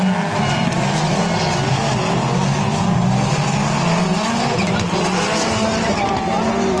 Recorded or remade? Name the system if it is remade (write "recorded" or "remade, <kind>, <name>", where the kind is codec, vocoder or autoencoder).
recorded